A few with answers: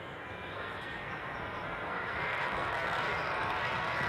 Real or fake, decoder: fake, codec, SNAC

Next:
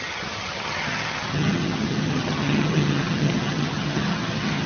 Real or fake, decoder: fake, vocoder, HiFi-GAN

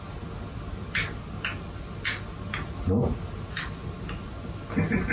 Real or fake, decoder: real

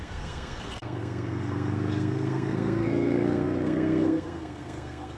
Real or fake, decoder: fake, codec, SNAC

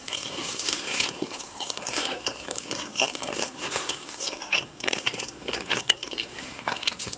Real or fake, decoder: fake, codec, SNAC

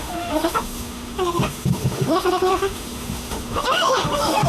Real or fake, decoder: fake, autoencoder, DAC-VAE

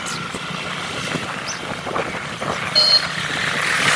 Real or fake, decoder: real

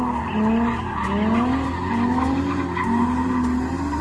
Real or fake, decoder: real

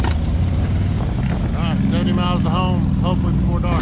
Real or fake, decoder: real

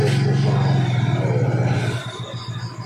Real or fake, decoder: real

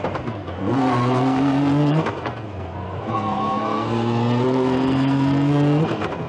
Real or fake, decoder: fake, codec, SNAC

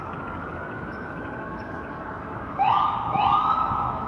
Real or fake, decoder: fake, codec, DAC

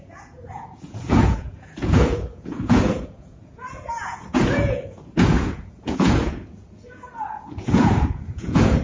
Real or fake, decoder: fake, vocoder, Vocos